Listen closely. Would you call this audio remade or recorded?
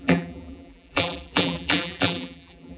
remade